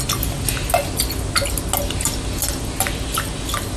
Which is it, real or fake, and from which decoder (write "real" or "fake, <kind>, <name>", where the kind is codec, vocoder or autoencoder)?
real